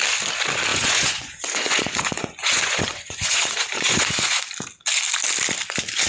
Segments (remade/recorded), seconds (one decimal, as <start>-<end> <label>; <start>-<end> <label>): 0.0-0.7 recorded; 0.7-4.4 remade; 4.4-6.1 recorded